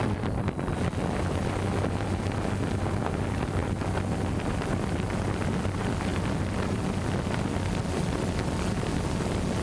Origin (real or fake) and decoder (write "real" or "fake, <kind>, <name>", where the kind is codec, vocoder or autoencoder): real